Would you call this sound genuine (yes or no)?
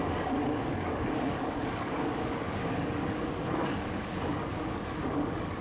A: no